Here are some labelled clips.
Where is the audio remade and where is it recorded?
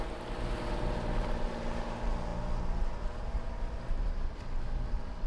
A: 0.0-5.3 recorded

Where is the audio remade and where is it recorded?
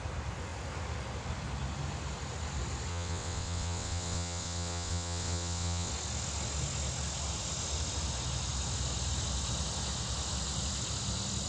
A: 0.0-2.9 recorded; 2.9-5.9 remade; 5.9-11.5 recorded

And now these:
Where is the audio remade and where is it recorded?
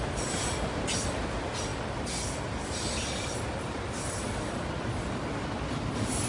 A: 0.0-6.3 recorded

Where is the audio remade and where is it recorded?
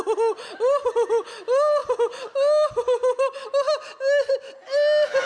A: 0.0-5.3 recorded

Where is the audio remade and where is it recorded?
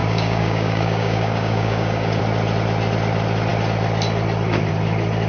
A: 0.0-2.2 remade; 2.2-5.3 recorded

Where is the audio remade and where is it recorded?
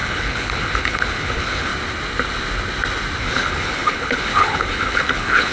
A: 0.0-1.7 remade; 1.7-3.2 recorded; 3.2-5.5 remade